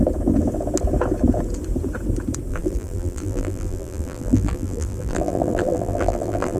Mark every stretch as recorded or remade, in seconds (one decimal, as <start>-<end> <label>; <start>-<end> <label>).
0.0-2.5 recorded; 2.5-6.6 remade